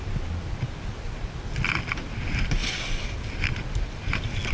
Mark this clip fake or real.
real